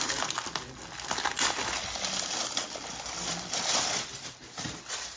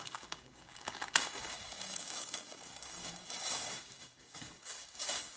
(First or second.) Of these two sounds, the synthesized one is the second